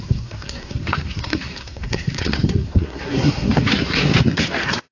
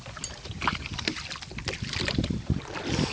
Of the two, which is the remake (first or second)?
first